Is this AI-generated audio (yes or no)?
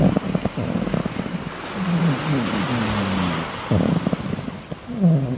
no